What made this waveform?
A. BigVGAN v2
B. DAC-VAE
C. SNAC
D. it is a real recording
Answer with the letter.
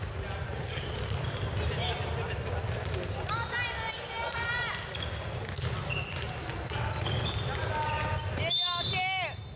D